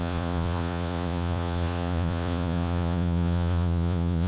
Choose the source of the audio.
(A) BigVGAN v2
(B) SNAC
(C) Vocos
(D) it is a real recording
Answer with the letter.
C